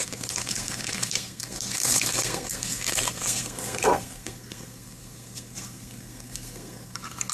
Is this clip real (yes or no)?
no